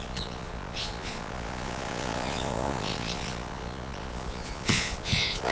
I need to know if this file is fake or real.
fake